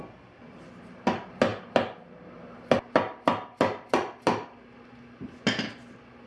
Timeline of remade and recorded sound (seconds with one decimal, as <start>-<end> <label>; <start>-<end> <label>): 0.0-6.3 recorded